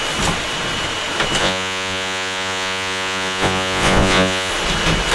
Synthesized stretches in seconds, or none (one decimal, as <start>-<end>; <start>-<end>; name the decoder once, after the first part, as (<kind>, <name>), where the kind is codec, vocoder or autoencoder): 1.4-4.5 (vocoder, Vocos)